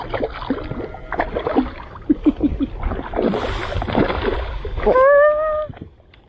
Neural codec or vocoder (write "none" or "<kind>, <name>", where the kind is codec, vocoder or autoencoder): none